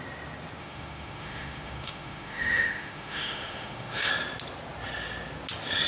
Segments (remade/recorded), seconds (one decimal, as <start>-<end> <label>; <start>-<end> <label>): 0.0-0.6 recorded; 0.6-4.1 remade; 4.1-5.9 recorded